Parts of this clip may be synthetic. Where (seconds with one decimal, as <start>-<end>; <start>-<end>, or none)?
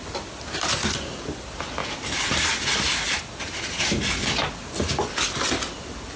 none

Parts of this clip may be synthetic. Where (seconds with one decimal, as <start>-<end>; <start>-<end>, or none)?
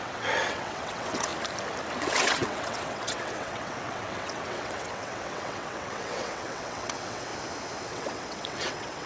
0.0-1.3; 2.0-7.3; 7.9-9.1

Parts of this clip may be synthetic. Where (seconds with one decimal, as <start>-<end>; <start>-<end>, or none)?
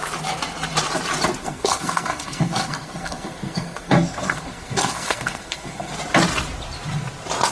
1.4-5.9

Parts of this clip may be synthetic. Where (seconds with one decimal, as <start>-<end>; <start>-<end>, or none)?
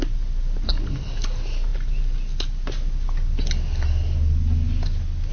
none